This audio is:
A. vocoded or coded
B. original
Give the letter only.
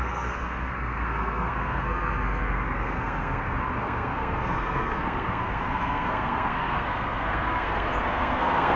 A